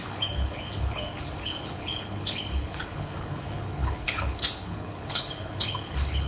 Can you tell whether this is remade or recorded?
remade